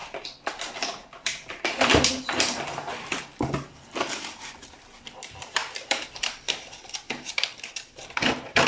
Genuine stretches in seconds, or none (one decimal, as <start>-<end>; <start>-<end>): none